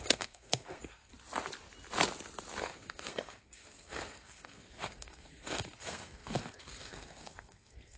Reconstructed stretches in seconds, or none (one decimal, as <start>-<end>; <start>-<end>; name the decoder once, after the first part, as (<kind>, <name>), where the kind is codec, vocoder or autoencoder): 0.0-1.1 (codec, SNAC); 2.6-8.0